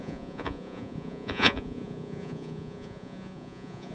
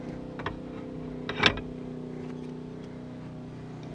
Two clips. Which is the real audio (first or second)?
second